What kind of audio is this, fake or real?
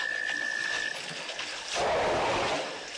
real